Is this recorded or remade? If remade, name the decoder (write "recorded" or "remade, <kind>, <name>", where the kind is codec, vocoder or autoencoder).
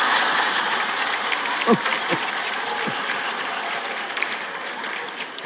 recorded